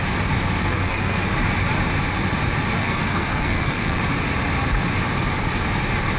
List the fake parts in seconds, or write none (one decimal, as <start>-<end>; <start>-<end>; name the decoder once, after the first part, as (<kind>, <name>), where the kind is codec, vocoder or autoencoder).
0.6-1.2 (codec, SNAC); 2.8-4.0

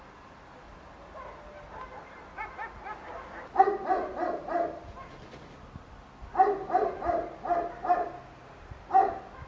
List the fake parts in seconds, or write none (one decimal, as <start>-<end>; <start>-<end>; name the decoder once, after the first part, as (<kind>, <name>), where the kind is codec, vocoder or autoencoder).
none

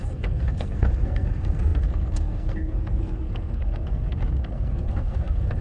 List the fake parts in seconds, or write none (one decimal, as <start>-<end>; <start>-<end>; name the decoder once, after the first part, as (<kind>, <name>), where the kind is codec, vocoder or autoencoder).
0.0-5.6 (codec, SNAC)

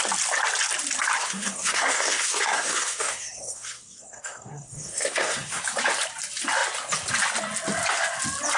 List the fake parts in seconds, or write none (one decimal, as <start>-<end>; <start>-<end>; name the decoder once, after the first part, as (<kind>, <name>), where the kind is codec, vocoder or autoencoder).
1.2-5.6 (codec, SNAC)

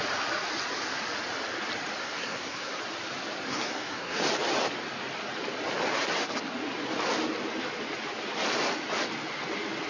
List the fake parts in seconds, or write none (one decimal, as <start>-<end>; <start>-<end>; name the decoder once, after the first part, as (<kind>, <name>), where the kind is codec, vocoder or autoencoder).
2.0-2.8 (codec, SNAC); 3.5-4.2

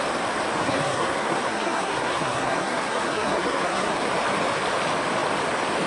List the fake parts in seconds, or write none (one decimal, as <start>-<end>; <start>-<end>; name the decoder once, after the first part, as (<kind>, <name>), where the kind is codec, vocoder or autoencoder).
0.6-4.1 (codec, SNAC)

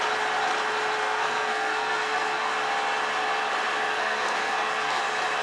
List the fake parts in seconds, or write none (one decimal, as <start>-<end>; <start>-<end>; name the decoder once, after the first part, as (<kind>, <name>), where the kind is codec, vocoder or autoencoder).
1.0-2.5 (codec, SNAC); 3.9-5.0